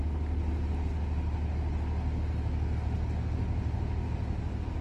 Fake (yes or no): no